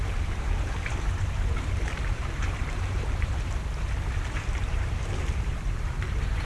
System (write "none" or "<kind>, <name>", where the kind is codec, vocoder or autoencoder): vocoder, BigVGAN v2